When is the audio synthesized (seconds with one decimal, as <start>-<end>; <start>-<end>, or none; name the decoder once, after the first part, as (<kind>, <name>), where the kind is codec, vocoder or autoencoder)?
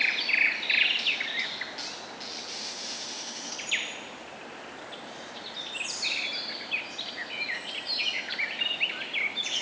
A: 2.5-3.5 (autoencoder, DAC-VAE)